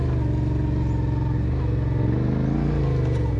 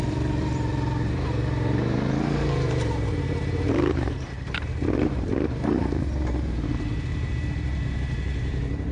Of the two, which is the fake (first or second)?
second